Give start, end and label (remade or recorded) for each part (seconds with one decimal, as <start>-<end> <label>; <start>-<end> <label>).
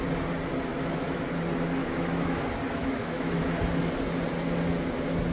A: 0.0-0.7 recorded; 0.7-1.2 remade; 1.2-1.8 recorded; 1.8-2.4 remade; 2.4-2.8 recorded; 2.8-3.4 remade; 3.4-5.3 recorded